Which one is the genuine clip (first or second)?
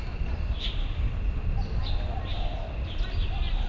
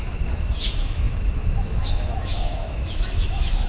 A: first